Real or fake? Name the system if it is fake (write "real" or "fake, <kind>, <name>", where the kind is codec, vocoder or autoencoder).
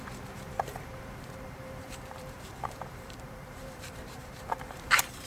fake, vocoder, BigVGAN v2